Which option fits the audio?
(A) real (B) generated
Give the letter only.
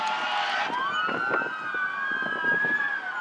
A